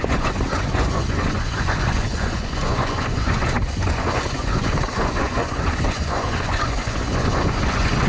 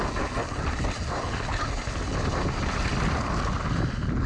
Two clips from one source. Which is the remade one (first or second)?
first